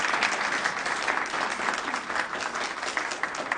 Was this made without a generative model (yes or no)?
yes